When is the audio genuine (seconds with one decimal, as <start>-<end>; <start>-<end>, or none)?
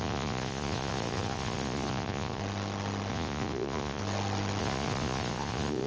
2.4-3.1; 4.0-4.6